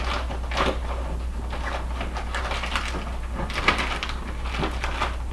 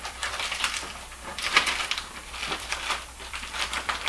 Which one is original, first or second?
first